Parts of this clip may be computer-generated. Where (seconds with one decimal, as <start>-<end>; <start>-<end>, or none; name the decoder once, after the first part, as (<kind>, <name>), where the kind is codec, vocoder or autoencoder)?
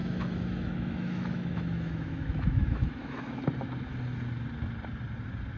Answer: 0.0-3.4 (autoencoder, DAC-VAE)